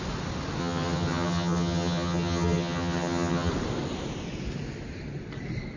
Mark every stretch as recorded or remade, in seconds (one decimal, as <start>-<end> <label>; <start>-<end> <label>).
0.0-0.6 recorded; 0.6-3.5 remade; 3.5-5.8 recorded